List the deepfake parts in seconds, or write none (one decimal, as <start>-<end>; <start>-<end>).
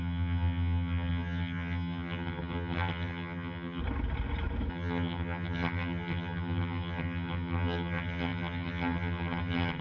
0.0-3.8; 4.7-9.8